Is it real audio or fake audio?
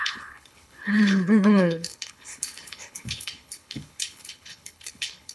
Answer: fake